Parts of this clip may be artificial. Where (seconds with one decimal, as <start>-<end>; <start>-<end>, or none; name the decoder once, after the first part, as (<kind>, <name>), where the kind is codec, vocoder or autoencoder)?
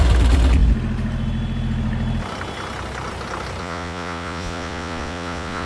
3.6-5.7 (vocoder, Vocos)